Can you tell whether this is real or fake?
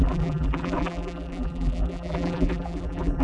fake